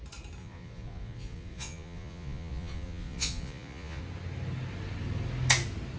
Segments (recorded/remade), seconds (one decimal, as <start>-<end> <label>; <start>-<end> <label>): 0.0-0.4 recorded; 0.4-4.0 remade; 4.0-6.0 recorded